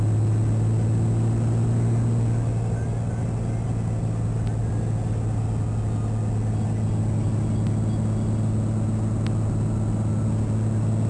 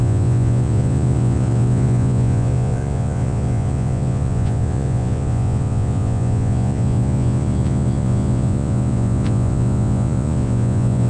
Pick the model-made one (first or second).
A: second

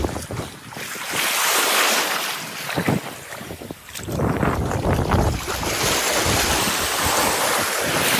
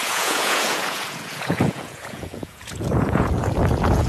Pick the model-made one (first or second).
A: second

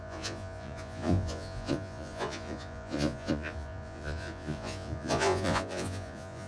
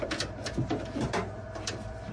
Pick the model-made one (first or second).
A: first